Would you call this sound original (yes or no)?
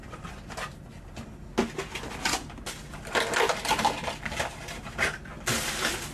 yes